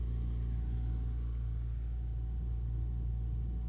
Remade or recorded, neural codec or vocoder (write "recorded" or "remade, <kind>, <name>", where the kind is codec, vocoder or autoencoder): recorded